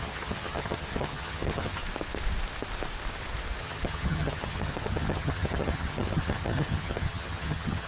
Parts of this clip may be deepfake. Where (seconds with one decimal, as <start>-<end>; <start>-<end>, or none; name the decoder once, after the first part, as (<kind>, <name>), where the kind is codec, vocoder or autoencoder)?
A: 0.0-1.8 (vocoder, HiFi-GAN); 3.6-7.9

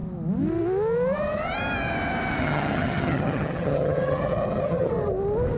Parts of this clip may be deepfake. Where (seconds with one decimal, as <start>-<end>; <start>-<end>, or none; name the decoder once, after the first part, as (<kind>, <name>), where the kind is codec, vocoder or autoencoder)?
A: 2.4-4.9 (vocoder, HiFi-GAN)

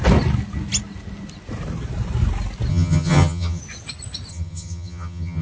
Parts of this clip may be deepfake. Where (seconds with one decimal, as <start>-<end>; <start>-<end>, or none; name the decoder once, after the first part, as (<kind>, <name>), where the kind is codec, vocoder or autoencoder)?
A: 2.7-3.6 (vocoder, HiFi-GAN); 4.3-5.4

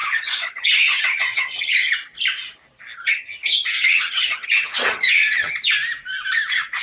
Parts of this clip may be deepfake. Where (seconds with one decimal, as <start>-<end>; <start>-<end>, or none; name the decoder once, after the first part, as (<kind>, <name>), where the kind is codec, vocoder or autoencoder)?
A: 0.0-1.9 (vocoder, HiFi-GAN); 3.0-5.5

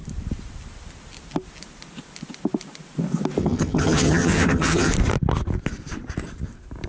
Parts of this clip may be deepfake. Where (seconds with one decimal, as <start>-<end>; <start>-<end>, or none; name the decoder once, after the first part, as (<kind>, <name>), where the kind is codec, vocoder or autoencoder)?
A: 3.4-4.9 (vocoder, HiFi-GAN)